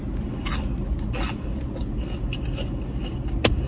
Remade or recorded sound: recorded